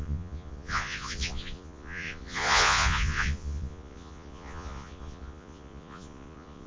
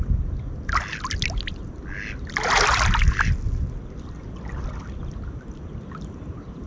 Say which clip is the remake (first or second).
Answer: first